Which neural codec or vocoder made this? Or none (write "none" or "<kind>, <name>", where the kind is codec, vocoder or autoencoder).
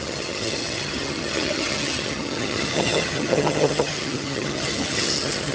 vocoder, HiFi-GAN